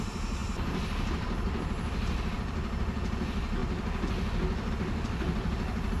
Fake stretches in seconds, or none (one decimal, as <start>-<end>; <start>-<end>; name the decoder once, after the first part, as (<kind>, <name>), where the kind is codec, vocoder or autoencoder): 0.0-3.6 (vocoder, BigVGAN v2); 4.7-6.0